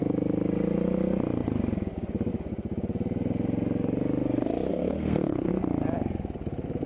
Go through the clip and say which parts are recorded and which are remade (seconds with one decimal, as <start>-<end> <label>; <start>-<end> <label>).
0.0-4.7 recorded; 4.7-5.5 remade; 5.5-6.9 recorded

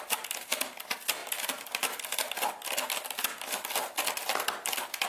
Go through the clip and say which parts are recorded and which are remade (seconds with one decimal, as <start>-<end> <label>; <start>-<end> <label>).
0.0-5.1 recorded